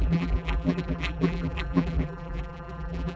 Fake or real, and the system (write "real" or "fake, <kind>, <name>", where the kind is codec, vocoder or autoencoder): fake, vocoder, BigVGAN v2